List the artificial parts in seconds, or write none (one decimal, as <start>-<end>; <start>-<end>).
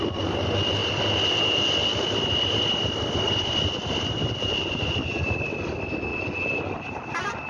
0.8-1.9; 4.2-5.5; 6.1-6.8